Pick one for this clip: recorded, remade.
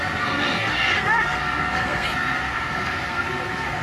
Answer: remade